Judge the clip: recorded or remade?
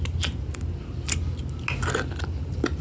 recorded